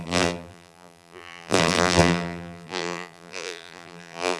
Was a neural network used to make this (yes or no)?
yes